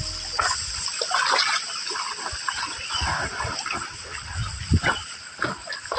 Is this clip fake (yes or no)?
no